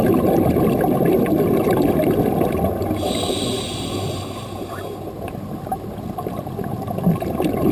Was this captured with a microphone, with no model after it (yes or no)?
yes